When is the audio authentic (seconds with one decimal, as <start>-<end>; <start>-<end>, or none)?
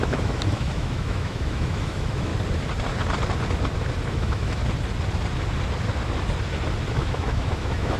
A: 2.3-4.1; 4.6-6.9